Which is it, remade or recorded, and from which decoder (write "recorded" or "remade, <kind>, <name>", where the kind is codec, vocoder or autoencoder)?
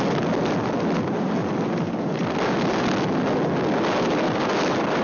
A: recorded